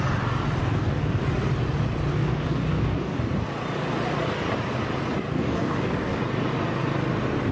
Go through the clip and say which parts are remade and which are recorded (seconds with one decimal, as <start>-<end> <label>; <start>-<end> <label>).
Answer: 0.0-0.6 recorded; 0.6-1.2 remade; 1.2-2.1 recorded; 2.1-3.2 remade; 3.2-5.3 recorded; 5.3-6.2 remade; 6.2-7.5 recorded